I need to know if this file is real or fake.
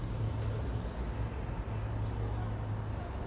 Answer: real